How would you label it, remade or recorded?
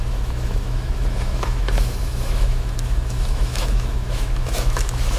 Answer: remade